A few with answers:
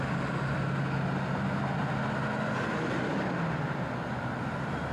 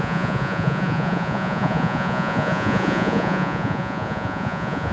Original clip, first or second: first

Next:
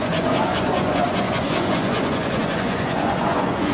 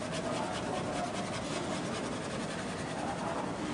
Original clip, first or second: second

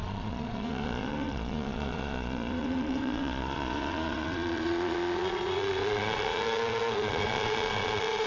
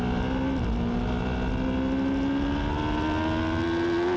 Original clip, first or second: second